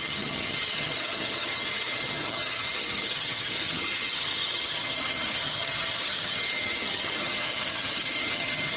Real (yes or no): no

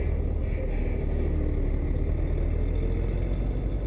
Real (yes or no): yes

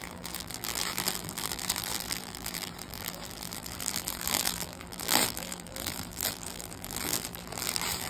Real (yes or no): no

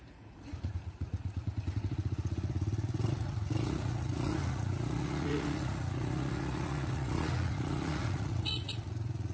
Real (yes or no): no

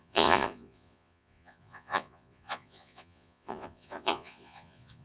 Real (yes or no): no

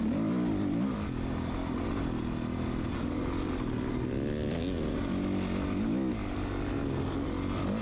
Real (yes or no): yes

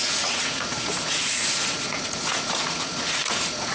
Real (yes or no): no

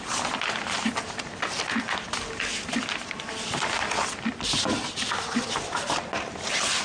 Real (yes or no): yes